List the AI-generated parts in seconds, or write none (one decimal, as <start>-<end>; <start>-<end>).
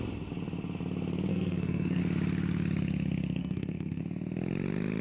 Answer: 1.3-2.0; 3.4-4.0